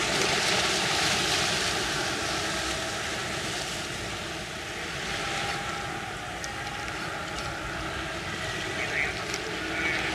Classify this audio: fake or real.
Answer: real